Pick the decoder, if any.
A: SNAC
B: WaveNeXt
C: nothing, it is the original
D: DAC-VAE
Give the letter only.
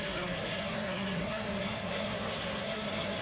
A